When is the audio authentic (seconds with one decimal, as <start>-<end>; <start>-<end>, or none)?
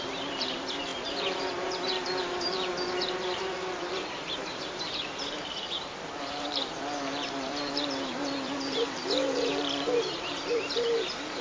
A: none